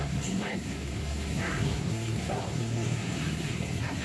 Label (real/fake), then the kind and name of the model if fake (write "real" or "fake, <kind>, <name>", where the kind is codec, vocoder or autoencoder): fake, codec, SNAC